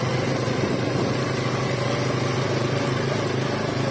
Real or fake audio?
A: real